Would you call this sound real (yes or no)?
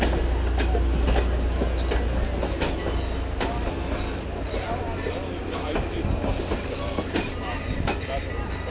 yes